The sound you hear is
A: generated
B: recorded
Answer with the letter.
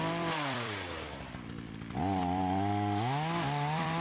A